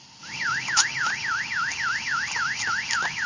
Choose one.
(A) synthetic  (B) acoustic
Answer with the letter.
B